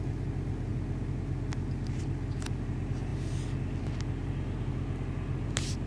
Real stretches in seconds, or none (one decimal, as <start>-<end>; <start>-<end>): 0.0-5.9